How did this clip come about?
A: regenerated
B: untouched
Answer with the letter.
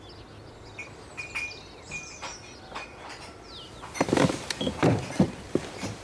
B